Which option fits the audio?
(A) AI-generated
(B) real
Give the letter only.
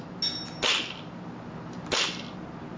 B